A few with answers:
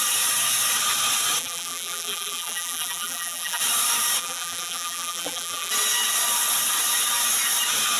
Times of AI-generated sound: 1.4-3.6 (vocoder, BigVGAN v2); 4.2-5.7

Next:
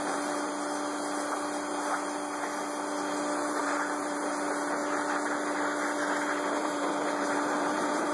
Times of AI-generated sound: 0.0-0.5 (vocoder, BigVGAN v2); 3.6-4.8; 6.5-8.1

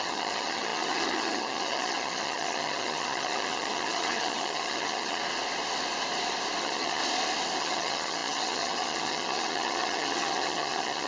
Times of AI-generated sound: 0.0-5.2 (vocoder, HiFi-GAN); 6.6-7.0; 7.6-11.1

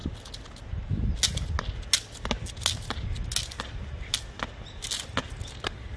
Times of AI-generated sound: none

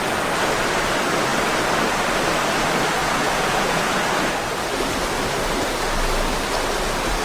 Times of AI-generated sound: 3.0-4.0 (vocoder, Vocos)

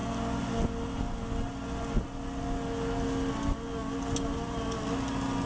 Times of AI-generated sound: none